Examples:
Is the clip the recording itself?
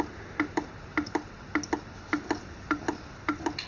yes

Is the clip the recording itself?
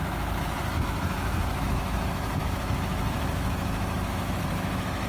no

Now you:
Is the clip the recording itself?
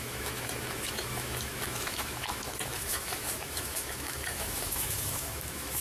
no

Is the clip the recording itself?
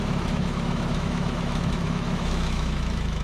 no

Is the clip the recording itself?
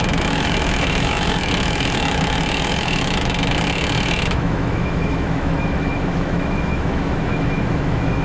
no